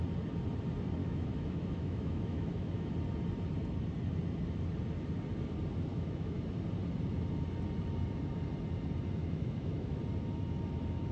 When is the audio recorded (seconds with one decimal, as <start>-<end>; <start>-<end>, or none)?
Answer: 0.0-1.0; 2.9-5.9; 6.4-9.2; 10.0-11.1